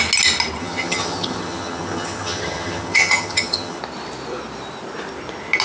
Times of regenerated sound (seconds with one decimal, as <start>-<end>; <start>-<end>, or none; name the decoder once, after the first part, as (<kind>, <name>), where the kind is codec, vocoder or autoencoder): 0.6-3.8 (vocoder, HiFi-GAN)

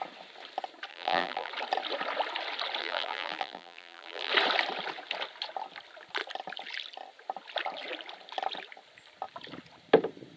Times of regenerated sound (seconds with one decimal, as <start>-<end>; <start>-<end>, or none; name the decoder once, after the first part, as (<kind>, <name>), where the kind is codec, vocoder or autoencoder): 0.9-1.5 (vocoder, BigVGAN v2); 2.8-4.3

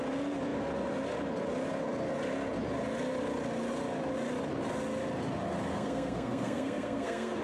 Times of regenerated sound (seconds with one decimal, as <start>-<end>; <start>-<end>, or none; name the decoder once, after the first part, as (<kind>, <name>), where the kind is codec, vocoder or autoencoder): 5.7-7.4 (codec, SNAC)

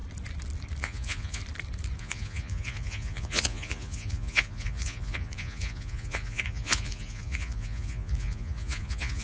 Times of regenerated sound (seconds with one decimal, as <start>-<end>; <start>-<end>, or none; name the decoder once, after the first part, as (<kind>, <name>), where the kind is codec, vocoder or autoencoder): 0.8-1.4 (vocoder, Vocos); 2.0-9.2

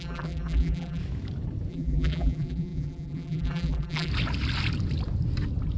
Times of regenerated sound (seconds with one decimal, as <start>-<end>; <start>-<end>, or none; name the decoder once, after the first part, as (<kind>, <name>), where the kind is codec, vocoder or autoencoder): 0.0-1.0 (vocoder, BigVGAN v2); 1.7-4.1